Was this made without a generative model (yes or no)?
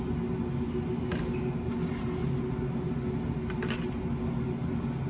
yes